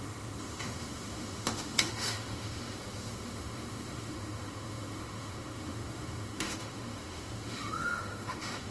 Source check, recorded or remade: remade